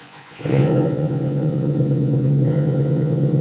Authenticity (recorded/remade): remade